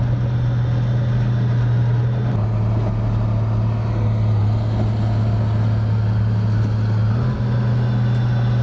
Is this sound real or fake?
real